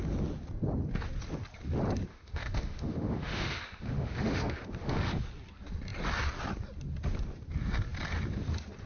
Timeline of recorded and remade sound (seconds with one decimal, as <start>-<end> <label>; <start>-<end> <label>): 0.0-2.1 recorded; 2.1-5.1 remade; 5.1-8.9 recorded